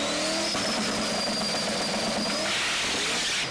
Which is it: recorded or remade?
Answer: recorded